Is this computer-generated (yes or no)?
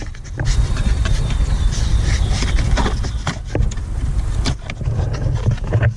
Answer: no